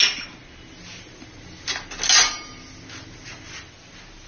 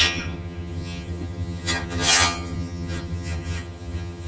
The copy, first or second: second